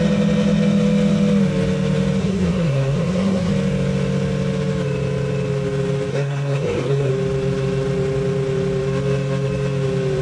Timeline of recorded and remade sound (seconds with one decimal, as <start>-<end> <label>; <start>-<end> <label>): 0.0-2.2 recorded; 2.2-3.5 remade; 3.5-6.1 recorded; 6.1-7.1 remade; 7.1-10.2 recorded